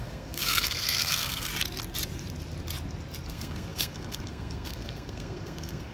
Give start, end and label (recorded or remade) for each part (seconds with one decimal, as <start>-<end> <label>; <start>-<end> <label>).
0.0-1.5 remade; 1.5-3.3 recorded; 3.3-5.9 remade